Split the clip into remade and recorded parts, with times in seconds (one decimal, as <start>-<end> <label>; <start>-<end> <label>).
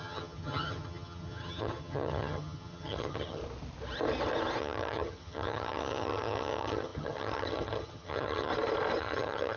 0.0-3.4 remade; 3.4-4.6 recorded; 4.6-8.5 remade; 8.5-9.0 recorded; 9.0-9.6 remade